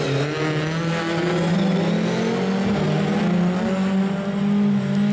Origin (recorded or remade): recorded